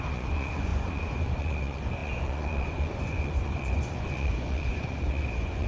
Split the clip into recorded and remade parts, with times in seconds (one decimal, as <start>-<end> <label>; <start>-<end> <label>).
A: 0.0-5.7 remade